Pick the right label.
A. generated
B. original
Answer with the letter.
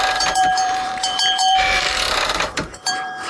A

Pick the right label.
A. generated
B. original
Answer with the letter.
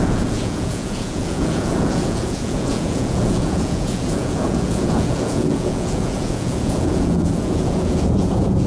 A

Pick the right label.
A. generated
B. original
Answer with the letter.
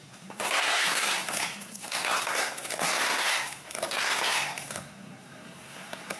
A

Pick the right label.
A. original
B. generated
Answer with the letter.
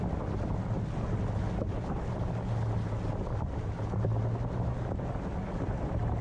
A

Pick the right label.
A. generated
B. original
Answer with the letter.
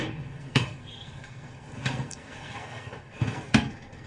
A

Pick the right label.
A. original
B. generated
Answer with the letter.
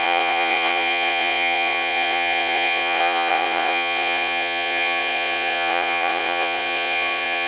B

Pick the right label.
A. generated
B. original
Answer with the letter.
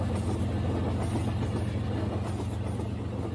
B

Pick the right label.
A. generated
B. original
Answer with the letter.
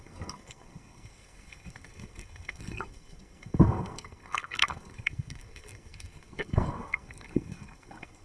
A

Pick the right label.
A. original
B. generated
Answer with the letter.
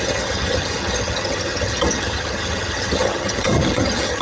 B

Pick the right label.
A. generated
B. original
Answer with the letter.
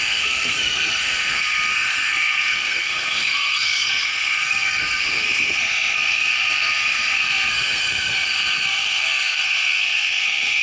A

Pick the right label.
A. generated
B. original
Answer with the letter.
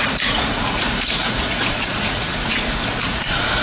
A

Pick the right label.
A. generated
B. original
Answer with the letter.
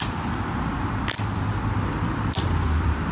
A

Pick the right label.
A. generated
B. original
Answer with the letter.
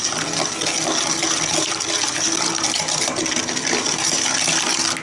B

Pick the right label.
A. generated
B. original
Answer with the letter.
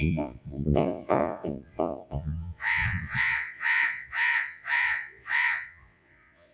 A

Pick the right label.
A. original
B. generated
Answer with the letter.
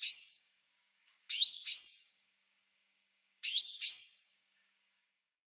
B